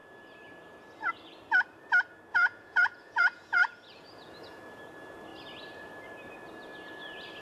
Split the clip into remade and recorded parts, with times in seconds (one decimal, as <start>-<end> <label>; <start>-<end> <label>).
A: 0.0-2.3 recorded; 2.3-4.6 remade; 4.6-7.4 recorded